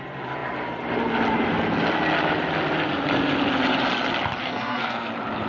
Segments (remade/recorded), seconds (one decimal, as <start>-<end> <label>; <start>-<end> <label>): 0.0-4.4 recorded; 4.4-5.1 remade; 5.1-5.5 recorded